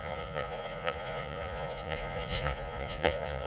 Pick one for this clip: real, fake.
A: fake